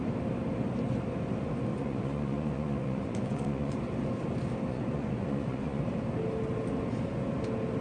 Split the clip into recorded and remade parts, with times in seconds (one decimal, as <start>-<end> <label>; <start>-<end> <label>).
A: 0.0-1.7 recorded; 1.7-3.8 remade; 3.8-4.7 recorded; 4.7-5.8 remade; 5.8-7.8 recorded